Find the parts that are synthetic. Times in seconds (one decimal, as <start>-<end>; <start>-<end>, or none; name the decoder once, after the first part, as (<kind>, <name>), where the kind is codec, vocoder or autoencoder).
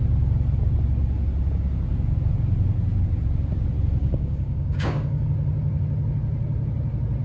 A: 4.0-5.3 (codec, DAC)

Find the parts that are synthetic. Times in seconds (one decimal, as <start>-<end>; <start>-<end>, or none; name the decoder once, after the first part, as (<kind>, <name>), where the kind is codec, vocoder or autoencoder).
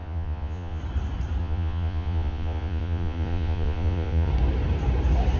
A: 0.0-0.8 (vocoder, Vocos); 1.4-4.3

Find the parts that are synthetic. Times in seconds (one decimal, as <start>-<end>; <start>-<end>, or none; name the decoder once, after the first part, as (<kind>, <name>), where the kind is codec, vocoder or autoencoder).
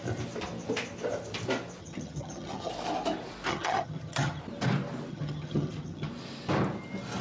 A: 1.8-2.7 (vocoder, HiFi-GAN); 3.5-4.4; 5.1-6.1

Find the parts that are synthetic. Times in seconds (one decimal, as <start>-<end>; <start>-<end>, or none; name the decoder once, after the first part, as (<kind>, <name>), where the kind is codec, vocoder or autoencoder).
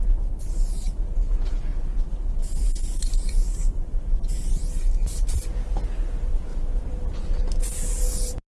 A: 2.4-4.5 (vocoder, BigVGAN v2)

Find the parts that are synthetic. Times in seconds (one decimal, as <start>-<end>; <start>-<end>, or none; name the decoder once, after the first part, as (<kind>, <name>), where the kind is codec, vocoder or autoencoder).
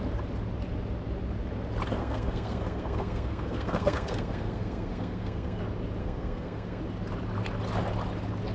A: 2.0-5.6 (codec, SNAC); 6.0-6.8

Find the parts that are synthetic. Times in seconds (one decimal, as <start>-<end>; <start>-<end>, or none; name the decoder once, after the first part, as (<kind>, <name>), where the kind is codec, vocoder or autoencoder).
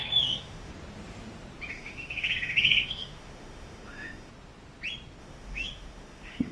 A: 0.0-0.7 (autoencoder, DAC-VAE); 1.7-4.3; 5.2-6.5